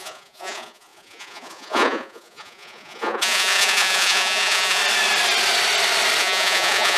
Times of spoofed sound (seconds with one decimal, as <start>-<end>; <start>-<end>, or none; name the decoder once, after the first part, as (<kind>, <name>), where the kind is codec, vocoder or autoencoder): 0.0-4.8 (vocoder, Vocos); 6.2-7.0